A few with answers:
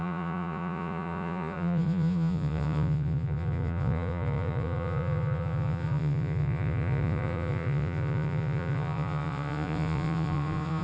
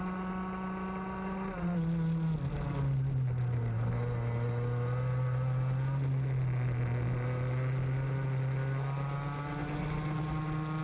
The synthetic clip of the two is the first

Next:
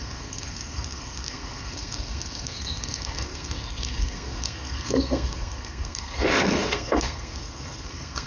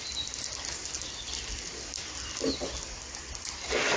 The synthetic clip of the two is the first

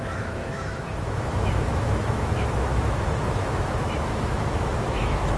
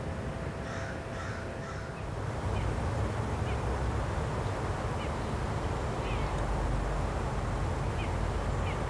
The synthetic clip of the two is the first